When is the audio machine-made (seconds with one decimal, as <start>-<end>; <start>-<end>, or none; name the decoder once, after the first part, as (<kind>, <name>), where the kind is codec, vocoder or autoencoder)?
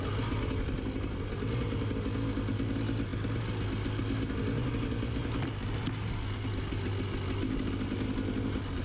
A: none